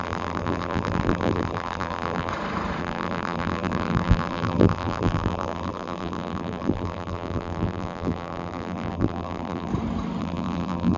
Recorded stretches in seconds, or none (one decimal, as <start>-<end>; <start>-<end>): 2.3-2.8; 9.7-10.2